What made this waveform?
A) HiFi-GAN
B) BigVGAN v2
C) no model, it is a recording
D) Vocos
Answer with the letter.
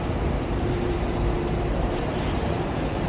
B